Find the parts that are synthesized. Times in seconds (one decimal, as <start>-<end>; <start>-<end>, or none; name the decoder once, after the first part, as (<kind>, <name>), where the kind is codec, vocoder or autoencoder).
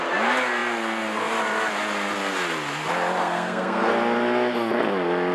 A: 3.2-3.9 (codec, SNAC)